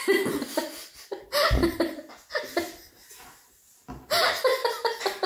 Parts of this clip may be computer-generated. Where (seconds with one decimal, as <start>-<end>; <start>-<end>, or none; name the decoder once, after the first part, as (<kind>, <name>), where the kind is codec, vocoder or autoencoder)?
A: 4.6-5.3 (vocoder, BigVGAN v2)